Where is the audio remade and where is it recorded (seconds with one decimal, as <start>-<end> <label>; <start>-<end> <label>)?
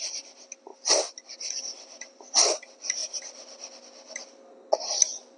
0.0-5.4 recorded